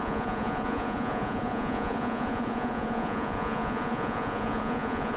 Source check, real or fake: fake